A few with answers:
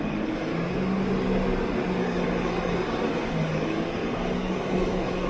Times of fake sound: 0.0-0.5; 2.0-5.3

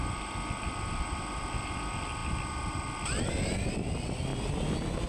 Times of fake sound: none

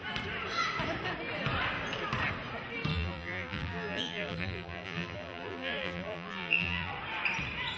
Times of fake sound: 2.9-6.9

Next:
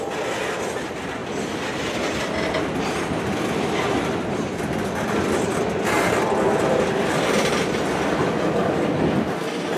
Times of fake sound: none

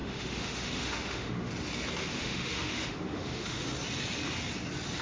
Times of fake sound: 0.0-1.5; 2.1-3.6

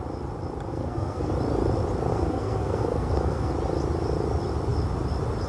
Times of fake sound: 0.7-1.3; 2.1-3.5

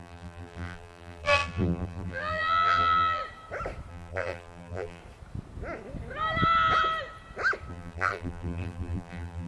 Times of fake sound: 0.0-3.2; 3.9-5.0; 7.7-9.5

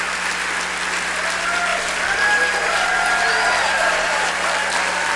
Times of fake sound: 1.7-4.3